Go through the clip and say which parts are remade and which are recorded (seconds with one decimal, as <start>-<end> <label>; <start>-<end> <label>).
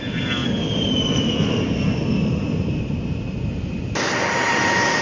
0.0-5.0 recorded